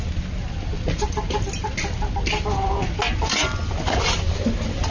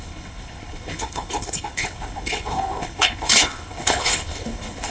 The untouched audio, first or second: first